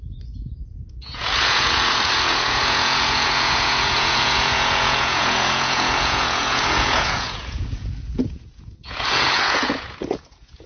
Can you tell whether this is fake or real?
fake